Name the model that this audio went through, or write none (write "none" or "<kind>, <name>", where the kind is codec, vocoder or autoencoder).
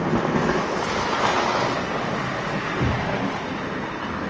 none